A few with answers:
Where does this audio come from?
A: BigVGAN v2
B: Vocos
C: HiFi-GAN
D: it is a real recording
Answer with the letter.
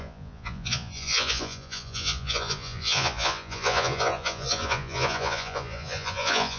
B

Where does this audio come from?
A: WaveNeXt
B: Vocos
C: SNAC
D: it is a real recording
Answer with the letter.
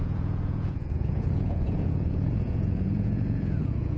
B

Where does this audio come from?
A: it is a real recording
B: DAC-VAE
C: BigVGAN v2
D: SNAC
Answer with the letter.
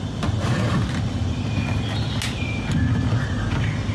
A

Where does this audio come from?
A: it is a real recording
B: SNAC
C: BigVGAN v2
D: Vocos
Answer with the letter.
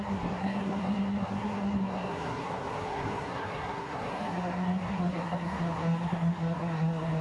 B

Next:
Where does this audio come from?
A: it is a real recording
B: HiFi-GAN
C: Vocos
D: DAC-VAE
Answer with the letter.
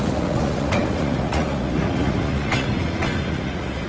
C